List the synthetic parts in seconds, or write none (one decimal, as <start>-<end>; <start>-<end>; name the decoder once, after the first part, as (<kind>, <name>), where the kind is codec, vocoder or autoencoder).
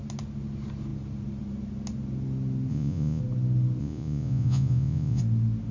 2.7-3.2 (vocoder, Vocos); 3.8-5.2